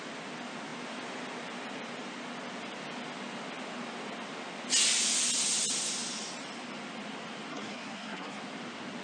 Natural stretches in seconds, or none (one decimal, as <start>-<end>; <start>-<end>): 0.0-7.5; 8.4-9.0